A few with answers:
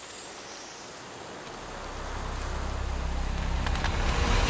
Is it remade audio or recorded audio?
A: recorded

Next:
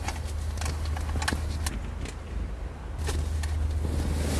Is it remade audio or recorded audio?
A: recorded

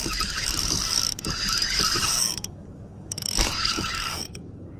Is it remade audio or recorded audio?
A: remade